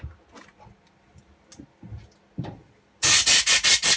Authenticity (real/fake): real